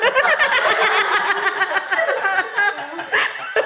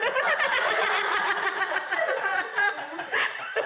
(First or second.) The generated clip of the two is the second